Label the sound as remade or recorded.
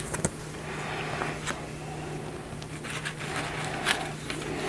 recorded